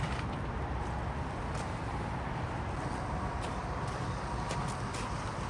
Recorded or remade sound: recorded